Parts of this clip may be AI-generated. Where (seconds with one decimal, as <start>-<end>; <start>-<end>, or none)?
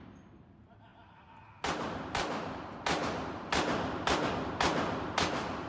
none